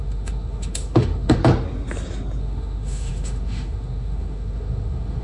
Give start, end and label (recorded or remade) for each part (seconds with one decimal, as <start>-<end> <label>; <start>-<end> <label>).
0.0-1.4 remade; 1.4-2.4 recorded; 2.4-5.2 remade